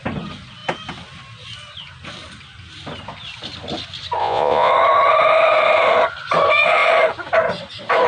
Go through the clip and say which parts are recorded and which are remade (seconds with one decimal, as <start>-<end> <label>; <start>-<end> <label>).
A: 0.0-4.2 recorded; 4.2-4.7 remade; 4.7-8.1 recorded